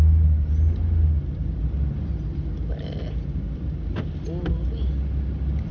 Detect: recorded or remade recorded